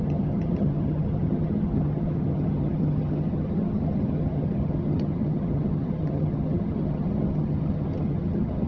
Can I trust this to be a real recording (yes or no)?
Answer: no